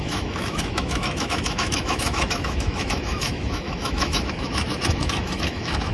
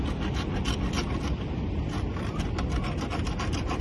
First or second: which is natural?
second